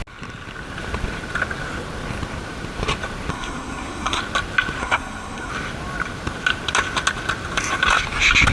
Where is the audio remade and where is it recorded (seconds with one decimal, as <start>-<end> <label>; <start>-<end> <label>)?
0.0-3.3 recorded; 3.3-4.2 remade; 4.2-4.8 recorded; 4.8-5.5 remade; 5.5-8.5 recorded